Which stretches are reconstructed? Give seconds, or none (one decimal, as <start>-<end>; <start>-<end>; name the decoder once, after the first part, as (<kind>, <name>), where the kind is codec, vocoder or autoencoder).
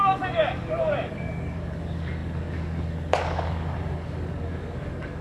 0.0-5.2 (codec, DAC)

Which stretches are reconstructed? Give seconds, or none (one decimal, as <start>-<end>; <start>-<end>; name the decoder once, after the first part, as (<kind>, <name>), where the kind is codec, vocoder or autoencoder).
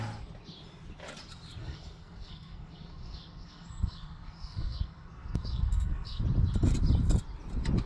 1.6-6.2 (codec, SNAC)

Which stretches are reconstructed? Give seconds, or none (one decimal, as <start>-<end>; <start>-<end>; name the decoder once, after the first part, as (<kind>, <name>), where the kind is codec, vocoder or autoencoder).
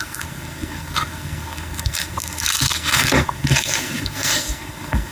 0.0-5.1 (codec, SNAC)